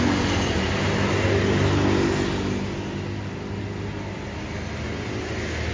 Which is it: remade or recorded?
recorded